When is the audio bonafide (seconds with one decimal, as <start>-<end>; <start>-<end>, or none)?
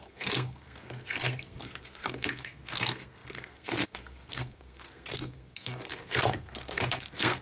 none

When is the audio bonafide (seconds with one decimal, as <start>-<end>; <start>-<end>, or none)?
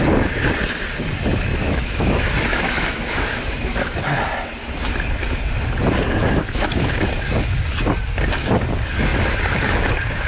0.0-1.5; 4.0-6.2; 7.1-10.3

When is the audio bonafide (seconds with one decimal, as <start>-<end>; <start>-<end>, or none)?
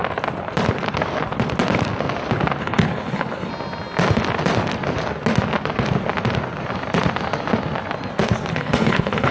0.0-2.6; 3.5-8.5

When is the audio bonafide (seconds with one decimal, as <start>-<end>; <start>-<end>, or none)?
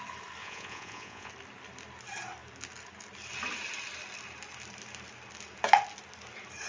0.0-0.4; 1.3-6.7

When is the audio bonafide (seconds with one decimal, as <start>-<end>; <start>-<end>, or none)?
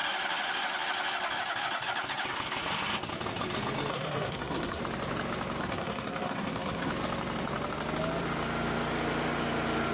0.0-3.9; 4.8-5.6; 6.9-9.9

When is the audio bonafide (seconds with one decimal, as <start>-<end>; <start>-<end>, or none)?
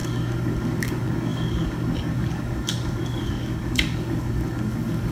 none